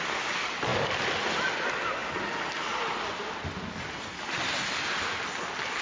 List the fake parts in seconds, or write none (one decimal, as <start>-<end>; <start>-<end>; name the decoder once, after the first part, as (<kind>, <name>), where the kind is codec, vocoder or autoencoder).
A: none